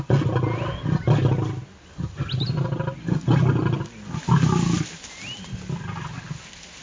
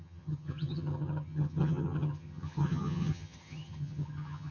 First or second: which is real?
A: first